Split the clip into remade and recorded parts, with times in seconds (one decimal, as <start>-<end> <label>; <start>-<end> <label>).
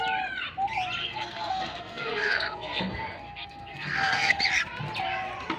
0.0-1.0 recorded; 1.0-4.4 remade; 4.4-5.6 recorded